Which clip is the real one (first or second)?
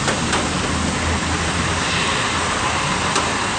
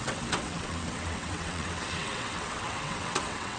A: first